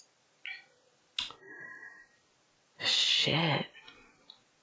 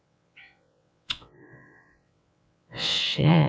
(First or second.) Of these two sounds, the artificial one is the second